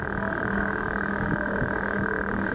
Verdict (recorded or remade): remade